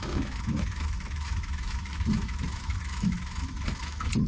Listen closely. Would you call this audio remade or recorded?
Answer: remade